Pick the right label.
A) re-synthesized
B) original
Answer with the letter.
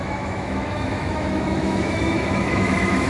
A